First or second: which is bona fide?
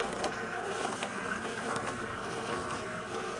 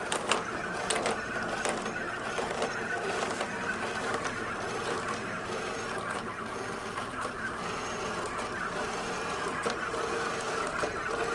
second